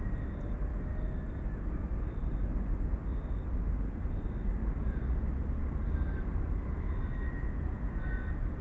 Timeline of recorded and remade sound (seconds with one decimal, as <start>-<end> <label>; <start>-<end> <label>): 0.0-8.6 recorded